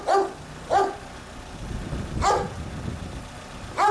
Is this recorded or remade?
recorded